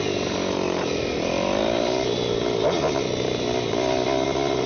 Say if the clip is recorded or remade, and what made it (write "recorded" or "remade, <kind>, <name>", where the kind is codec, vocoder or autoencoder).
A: recorded